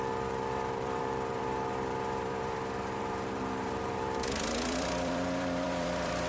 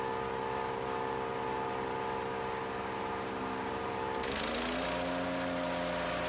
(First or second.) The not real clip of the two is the first